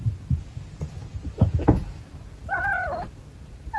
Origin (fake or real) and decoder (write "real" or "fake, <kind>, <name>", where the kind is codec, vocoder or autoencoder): real